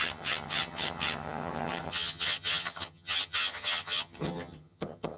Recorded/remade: remade